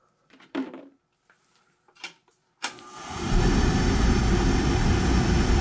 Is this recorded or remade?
remade